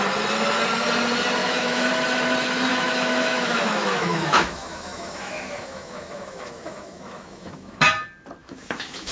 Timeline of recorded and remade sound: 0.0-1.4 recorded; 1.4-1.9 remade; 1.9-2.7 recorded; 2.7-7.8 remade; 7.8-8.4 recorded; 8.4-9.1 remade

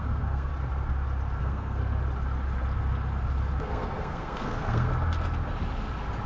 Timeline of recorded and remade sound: 0.0-0.5 remade; 0.5-1.4 recorded; 1.4-1.8 remade; 1.8-3.6 recorded; 3.6-4.9 remade; 4.9-6.3 recorded

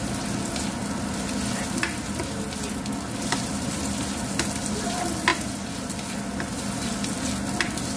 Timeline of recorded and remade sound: 0.0-8.0 recorded

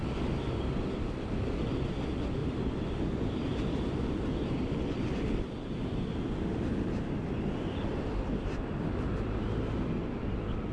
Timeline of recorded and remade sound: 0.0-2.4 recorded; 2.4-5.4 remade; 5.4-10.7 recorded